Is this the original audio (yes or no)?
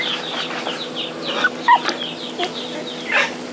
yes